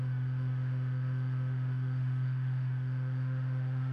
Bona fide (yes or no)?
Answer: no